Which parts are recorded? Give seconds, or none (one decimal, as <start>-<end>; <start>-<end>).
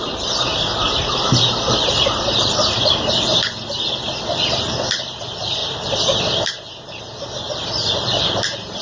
0.5-1.4; 3.3-4.5